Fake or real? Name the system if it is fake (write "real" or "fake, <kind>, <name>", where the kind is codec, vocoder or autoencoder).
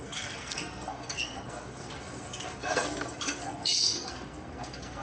fake, codec, SNAC